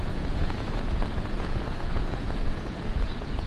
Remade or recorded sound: remade